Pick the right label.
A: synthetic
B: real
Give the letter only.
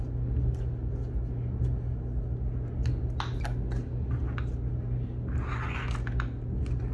B